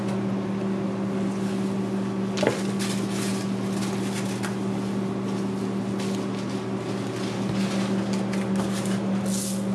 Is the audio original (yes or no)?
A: yes